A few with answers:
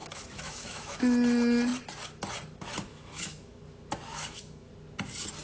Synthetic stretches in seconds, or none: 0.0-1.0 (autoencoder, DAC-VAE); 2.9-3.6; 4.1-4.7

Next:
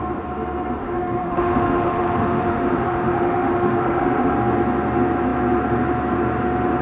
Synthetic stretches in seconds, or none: 0.8-4.3 (autoencoder, DAC-VAE)

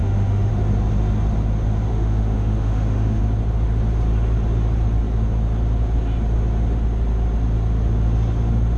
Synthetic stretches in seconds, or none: 0.0-0.5 (autoencoder, DAC-VAE); 1.9-3.2

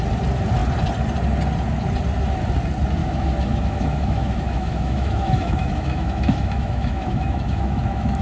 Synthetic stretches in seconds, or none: 3.0-8.2 (autoencoder, DAC-VAE)